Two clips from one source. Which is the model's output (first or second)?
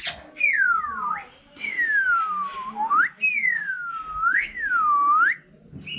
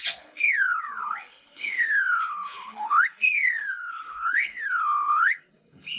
second